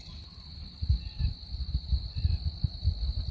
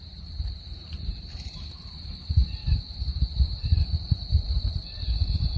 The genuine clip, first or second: first